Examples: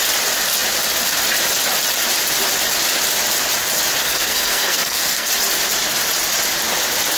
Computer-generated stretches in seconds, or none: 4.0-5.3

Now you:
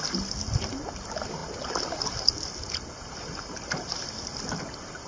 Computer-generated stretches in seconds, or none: none

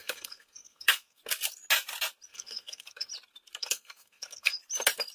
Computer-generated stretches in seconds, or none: 0.0-1.2; 2.3-3.1; 3.6-4.6

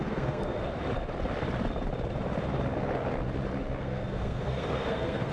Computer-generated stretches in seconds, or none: 0.0-0.6; 3.8-5.3

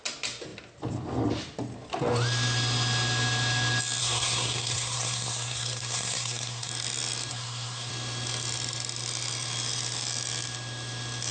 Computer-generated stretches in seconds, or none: 4.0-6.7; 7.3-7.9

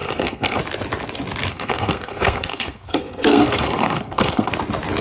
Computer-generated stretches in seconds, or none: 0.0-0.6; 1.5-4.5

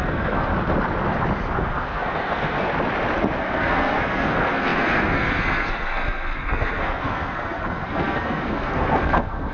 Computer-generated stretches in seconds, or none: 0.0-0.5; 1.6-2.7; 3.4-9.5

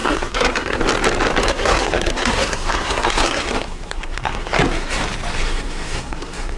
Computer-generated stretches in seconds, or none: 0.0-0.8; 1.4-5.0; 5.4-6.6